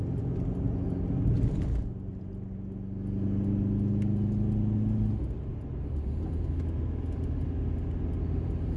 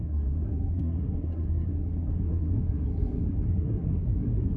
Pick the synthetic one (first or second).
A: second